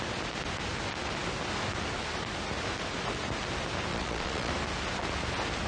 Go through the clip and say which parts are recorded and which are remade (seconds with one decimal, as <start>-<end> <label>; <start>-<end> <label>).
0.0-3.9 recorded; 3.9-4.5 remade; 4.5-5.7 recorded